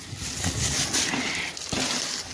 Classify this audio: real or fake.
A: real